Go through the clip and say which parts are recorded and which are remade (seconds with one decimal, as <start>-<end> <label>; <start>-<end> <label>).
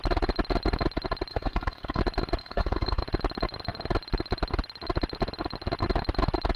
0.0-1.3 recorded; 1.3-2.0 remade; 2.0-2.4 recorded; 2.4-3.0 remade; 3.0-6.6 recorded